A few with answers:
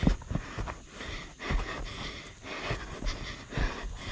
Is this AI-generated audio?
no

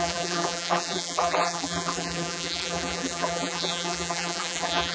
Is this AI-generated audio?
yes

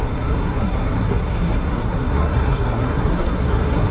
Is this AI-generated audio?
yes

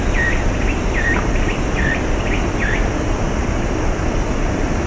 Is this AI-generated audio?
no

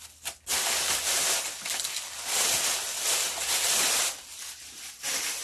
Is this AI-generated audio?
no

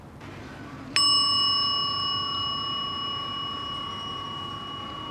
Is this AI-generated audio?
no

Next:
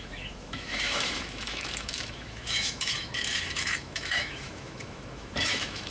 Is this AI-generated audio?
yes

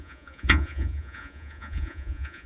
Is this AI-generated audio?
yes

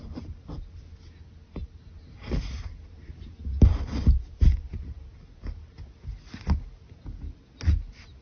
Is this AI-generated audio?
no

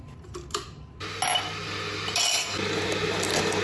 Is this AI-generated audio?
no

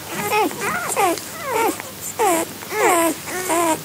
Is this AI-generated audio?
no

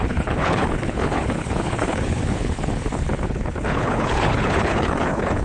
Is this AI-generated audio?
yes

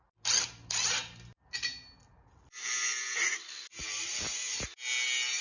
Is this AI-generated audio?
no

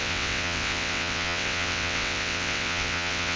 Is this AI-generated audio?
yes